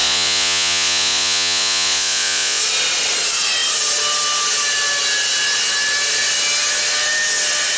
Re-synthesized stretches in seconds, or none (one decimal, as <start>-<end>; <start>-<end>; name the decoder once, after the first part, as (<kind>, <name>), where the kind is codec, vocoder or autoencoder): 0.0-2.6 (vocoder, Vocos)